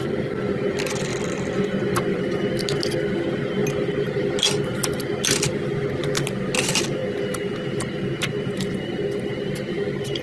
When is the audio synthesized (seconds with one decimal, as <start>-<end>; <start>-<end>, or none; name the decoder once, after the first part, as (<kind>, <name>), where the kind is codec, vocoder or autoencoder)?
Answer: 1.1-2.2 (vocoder, BigVGAN v2); 3.6-4.9

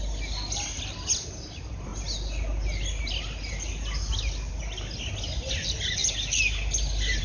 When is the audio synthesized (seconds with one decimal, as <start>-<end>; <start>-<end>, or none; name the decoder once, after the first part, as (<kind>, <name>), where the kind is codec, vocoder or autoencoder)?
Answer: none

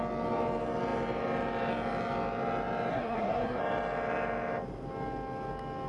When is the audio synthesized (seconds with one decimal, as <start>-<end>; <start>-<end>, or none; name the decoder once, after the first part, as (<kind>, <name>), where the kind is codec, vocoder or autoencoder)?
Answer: 2.9-3.6 (codec, SNAC)

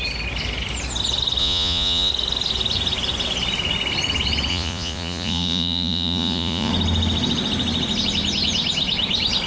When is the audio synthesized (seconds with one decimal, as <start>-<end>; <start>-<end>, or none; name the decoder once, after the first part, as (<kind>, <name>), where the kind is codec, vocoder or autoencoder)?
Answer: 1.4-2.1 (vocoder, Vocos); 4.5-6.7

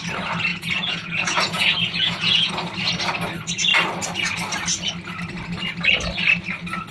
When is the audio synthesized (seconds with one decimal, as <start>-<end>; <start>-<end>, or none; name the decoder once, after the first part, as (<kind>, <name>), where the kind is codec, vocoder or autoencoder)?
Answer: 0.5-2.5 (vocoder, Vocos)

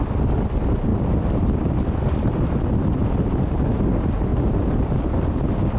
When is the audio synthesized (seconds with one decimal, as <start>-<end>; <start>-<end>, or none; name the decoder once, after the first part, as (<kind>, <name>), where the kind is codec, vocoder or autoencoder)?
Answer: 0.9-3.1 (vocoder, BigVGAN v2); 4.3-5.8